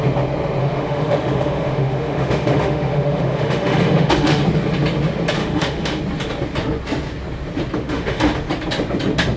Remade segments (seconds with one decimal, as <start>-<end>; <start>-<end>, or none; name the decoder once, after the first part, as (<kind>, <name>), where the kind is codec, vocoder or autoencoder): 0.6-4.4 (autoencoder, DAC-VAE); 5.4-6.0; 7.8-8.3